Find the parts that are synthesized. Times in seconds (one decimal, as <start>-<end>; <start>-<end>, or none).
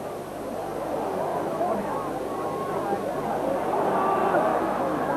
1.3-1.8; 4.5-5.2